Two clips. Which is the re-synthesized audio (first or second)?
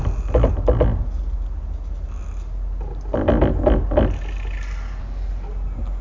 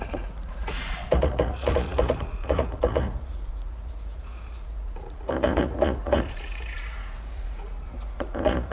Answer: second